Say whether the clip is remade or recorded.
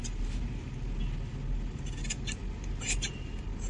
recorded